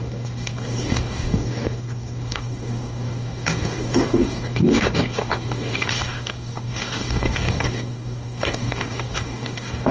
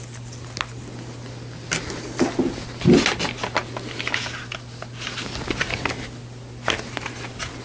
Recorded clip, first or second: second